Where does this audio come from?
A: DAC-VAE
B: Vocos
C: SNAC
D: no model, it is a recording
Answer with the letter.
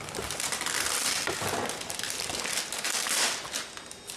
D